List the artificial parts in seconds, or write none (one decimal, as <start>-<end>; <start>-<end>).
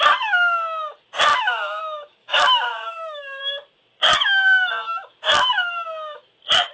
1.3-1.8; 2.2-3.4